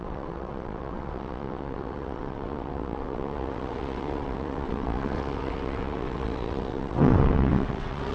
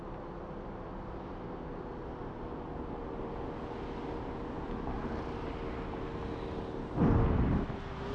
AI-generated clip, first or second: first